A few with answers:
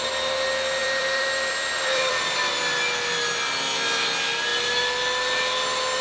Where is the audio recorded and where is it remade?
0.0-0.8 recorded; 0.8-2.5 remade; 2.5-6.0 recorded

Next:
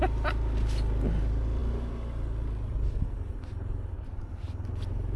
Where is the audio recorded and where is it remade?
0.0-5.2 recorded